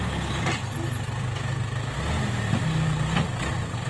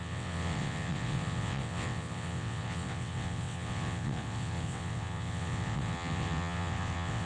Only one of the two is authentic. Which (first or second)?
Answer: first